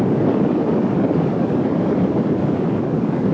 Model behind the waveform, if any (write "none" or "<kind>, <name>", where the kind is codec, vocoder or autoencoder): codec, DAC